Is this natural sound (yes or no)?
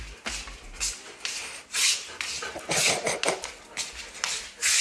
yes